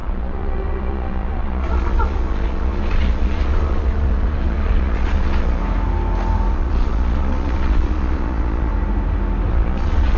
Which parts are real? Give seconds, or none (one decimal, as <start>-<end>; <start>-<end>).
5.6-6.5; 8.7-9.5